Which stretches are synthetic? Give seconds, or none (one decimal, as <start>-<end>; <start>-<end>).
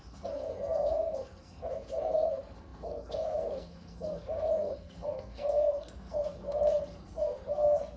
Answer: 0.0-8.0